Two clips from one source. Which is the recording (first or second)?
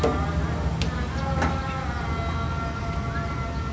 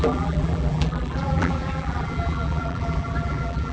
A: first